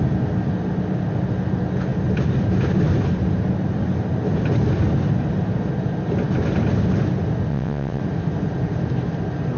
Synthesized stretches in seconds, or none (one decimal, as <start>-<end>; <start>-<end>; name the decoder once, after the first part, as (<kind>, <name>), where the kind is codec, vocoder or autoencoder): 7.5-8.0 (vocoder, WaveNeXt)